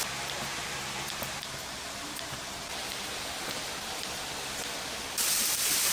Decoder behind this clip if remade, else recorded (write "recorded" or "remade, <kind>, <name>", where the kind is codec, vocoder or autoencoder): remade, vocoder, BigVGAN v2